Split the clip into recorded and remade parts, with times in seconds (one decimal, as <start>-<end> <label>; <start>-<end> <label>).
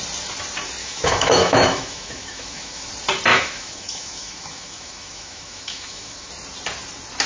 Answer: 0.0-0.8 recorded; 0.8-2.9 remade; 2.9-3.3 recorded; 3.3-6.3 remade; 6.3-7.3 recorded